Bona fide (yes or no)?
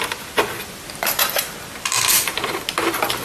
yes